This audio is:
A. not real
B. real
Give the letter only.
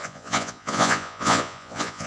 A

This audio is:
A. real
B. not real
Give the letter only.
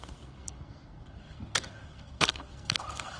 B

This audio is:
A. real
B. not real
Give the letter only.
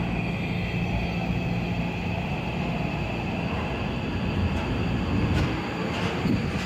A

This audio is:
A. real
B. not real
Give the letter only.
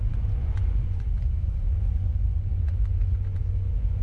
B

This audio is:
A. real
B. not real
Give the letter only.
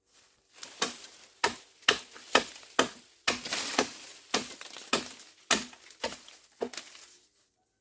A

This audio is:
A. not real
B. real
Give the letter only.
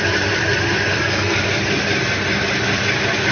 B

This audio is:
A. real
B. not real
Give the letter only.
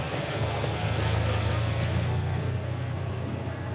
B